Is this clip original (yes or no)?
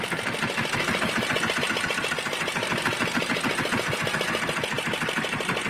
yes